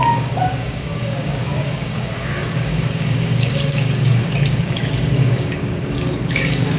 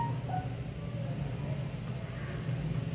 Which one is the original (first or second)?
second